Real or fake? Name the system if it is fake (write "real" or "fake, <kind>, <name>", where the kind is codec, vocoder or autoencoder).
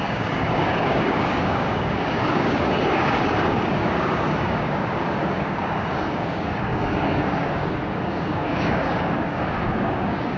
fake, codec, DAC